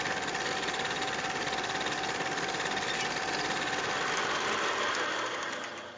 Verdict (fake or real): real